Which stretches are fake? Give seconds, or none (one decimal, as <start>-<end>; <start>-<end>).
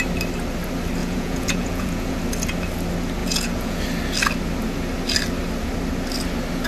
1.0-2.2; 3.2-3.8